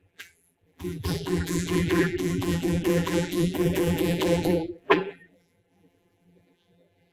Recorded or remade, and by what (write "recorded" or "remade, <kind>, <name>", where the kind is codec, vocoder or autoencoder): remade, vocoder, BigVGAN v2